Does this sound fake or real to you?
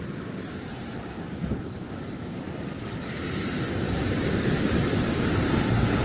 fake